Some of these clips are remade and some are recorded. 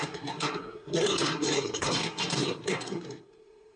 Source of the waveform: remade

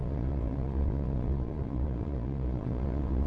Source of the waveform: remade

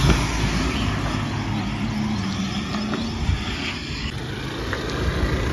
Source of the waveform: recorded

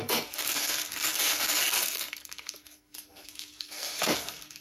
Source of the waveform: remade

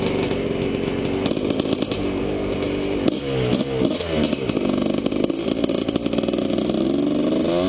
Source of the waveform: recorded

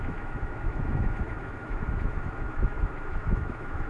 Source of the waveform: remade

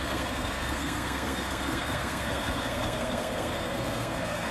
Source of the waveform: remade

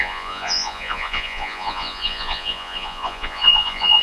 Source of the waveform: remade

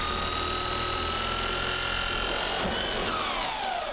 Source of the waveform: recorded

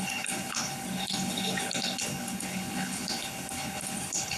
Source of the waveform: remade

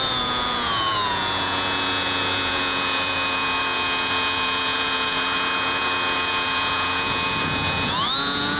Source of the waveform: remade